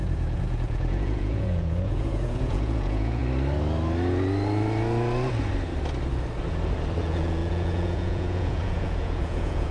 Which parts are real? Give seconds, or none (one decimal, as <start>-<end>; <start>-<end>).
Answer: 3.2-7.0